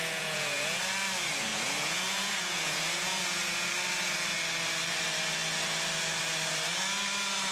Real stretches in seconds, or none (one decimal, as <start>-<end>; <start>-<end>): 0.8-1.5; 3.7-7.5